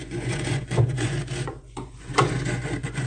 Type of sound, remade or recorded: remade